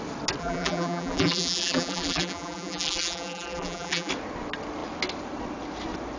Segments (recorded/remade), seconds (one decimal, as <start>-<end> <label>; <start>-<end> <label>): 0.0-0.4 recorded; 0.4-4.1 remade; 4.1-6.2 recorded